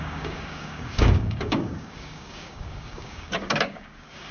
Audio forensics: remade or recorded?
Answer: remade